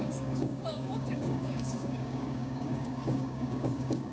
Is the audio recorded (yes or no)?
no